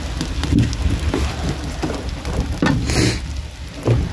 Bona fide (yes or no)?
yes